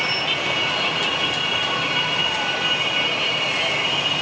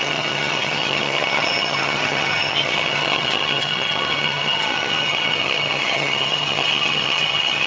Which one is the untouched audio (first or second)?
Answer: first